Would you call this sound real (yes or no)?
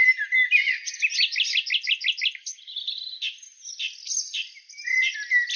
yes